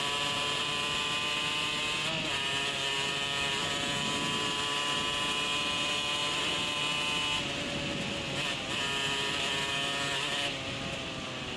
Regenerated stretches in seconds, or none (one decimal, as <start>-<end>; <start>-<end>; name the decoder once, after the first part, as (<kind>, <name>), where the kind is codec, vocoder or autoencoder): none